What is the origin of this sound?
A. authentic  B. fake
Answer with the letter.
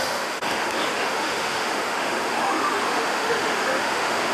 B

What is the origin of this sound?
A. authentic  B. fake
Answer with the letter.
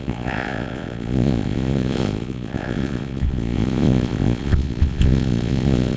B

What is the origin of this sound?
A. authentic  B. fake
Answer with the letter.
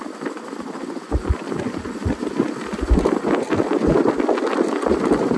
A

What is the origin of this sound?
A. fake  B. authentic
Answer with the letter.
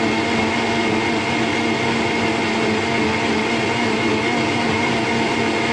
B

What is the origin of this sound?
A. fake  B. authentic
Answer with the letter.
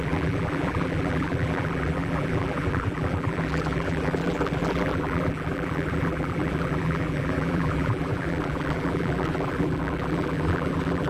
A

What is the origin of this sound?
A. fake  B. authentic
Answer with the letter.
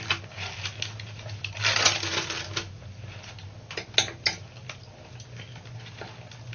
B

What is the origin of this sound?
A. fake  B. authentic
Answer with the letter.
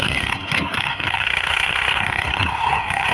A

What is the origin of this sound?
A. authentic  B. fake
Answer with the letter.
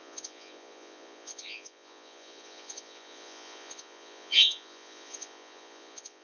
B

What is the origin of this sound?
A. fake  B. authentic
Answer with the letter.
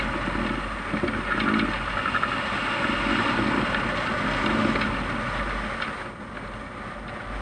B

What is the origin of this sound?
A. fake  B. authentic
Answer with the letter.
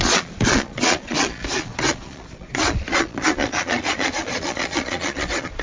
A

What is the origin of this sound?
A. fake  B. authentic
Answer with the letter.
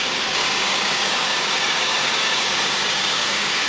A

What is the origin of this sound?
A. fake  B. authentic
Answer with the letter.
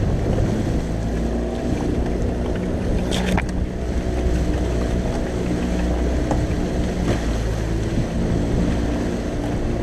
B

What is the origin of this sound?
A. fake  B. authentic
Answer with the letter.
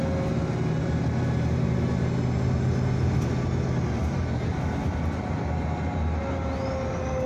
B